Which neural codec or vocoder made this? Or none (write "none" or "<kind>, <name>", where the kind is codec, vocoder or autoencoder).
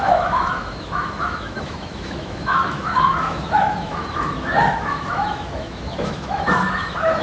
autoencoder, DAC-VAE